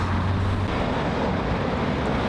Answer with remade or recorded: recorded